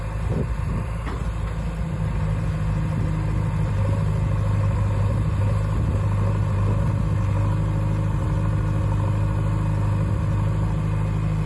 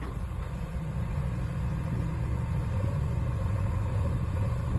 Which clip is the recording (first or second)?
first